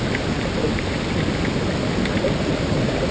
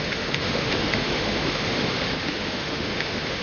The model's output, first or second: second